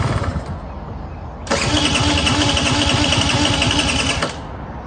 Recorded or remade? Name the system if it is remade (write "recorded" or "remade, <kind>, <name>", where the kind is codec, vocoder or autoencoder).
recorded